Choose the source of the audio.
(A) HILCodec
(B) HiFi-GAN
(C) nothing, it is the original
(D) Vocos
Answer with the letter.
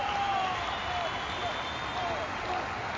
C